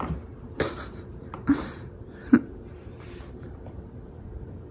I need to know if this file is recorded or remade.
remade